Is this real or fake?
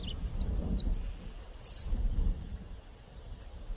real